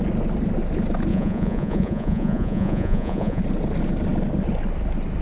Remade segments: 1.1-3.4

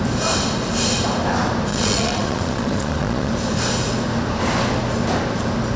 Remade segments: 1.7-3.3

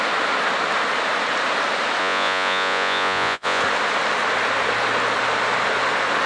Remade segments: 2.0-3.6

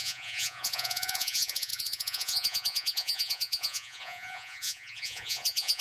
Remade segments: 0.0-5.8

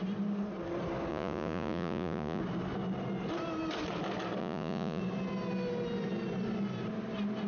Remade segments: 1.1-2.4; 4.4-5.0